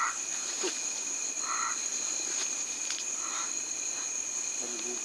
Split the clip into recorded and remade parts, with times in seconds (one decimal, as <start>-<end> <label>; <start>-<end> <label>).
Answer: 0.0-5.0 recorded